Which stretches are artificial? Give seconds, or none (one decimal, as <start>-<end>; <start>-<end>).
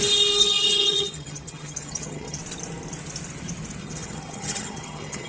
0.4-2.4; 3.8-5.3